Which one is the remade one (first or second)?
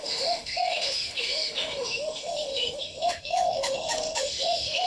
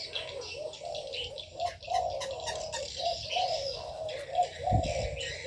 first